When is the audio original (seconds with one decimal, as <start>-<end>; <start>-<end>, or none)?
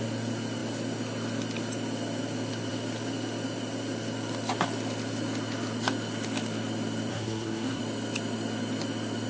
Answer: 0.0-7.1; 7.8-9.3